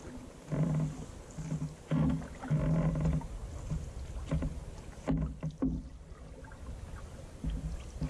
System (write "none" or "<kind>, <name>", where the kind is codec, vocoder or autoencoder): none